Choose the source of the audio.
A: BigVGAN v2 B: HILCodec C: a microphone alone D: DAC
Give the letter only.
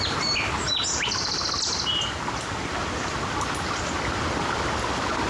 C